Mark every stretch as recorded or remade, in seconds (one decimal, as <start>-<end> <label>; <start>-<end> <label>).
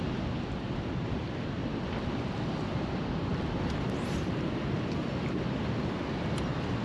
0.0-6.8 recorded